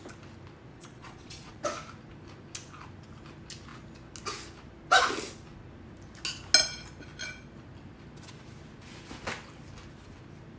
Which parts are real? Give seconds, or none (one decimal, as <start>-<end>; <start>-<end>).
0.0-0.7; 1.6-10.6